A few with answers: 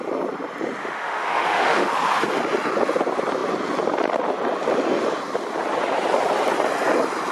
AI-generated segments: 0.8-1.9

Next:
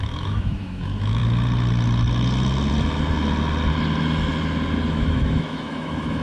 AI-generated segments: 0.0-1.2; 4.9-6.2

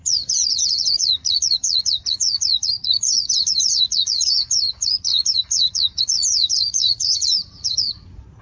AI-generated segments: 0.0-8.4

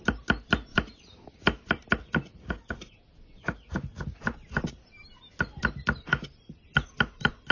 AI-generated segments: none

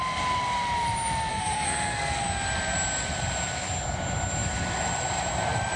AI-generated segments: 1.3-2.2

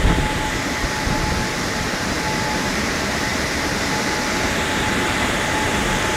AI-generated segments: 0.0-6.2

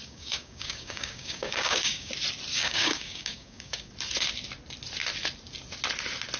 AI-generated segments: 0.0-2.1; 2.5-3.9

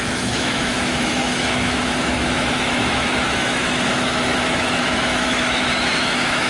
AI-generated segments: 0.0-6.5